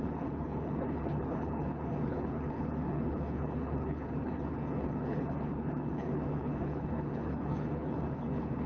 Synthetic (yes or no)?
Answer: yes